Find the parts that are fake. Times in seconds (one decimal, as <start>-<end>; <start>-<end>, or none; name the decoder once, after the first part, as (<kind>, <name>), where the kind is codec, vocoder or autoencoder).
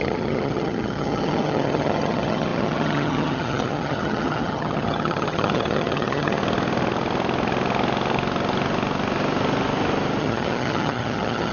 0.0-6.4 (vocoder, HiFi-GAN); 10.2-11.5